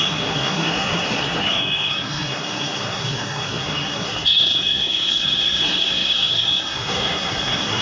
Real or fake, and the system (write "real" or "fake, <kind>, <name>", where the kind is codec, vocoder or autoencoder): fake, codec, SNAC